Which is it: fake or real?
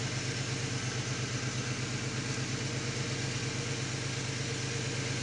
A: real